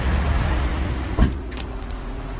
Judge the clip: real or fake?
fake